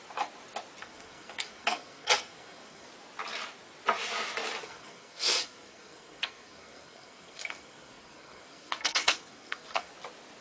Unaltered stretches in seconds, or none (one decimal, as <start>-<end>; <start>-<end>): 0.0-0.8; 2.9-4.6; 9.9-10.4